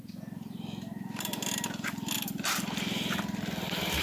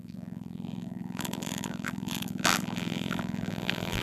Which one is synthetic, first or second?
second